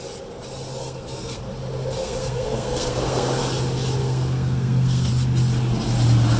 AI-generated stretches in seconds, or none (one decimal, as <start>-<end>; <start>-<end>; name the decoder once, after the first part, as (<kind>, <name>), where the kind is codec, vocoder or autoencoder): 0.8-1.5 (codec, SNAC); 2.0-3.4; 4.0-5.1

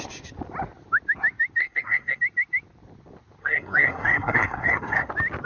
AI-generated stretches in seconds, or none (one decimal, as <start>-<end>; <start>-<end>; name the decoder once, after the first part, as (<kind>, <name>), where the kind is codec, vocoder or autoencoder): 1.6-2.2 (codec, SNAC); 3.4-5.1